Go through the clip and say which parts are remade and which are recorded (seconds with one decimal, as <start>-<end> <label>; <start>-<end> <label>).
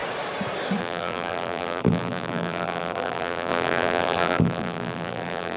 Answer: 0.0-0.8 recorded; 0.8-5.6 remade